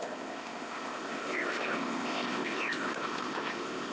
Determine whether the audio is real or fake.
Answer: fake